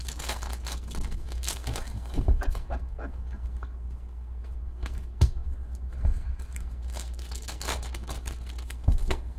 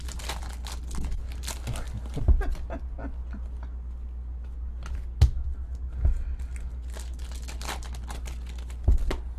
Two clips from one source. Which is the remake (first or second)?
first